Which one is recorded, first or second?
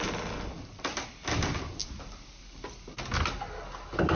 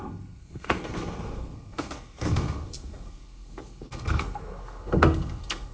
first